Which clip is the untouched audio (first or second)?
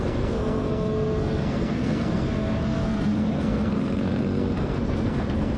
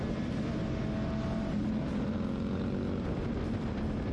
second